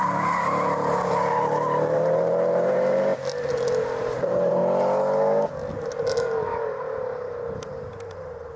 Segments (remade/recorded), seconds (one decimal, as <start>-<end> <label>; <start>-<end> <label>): 0.0-3.1 remade; 3.1-4.0 recorded; 4.0-4.6 remade; 4.6-6.2 recorded; 6.2-8.6 remade